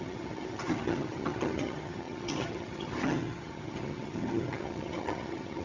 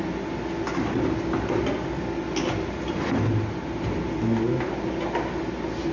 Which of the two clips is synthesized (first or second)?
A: first